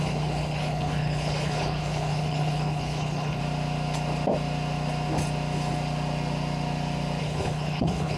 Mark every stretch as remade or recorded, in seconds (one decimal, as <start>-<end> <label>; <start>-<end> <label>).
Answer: 0.0-3.4 remade; 3.4-7.2 recorded; 7.2-8.2 remade